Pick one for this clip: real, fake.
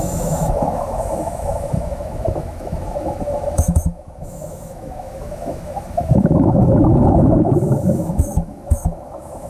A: fake